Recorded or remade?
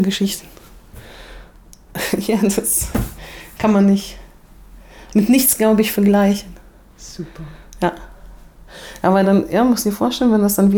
recorded